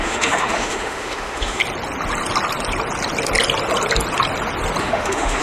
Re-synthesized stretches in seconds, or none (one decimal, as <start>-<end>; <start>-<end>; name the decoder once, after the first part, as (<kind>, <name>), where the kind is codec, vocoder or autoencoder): 0.0-1.6 (autoencoder, DAC-VAE); 4.8-5.4